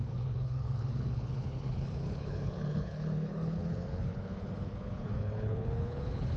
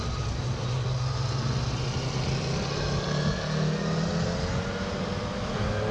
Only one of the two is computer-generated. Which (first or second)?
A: first